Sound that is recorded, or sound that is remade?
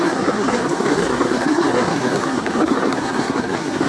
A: remade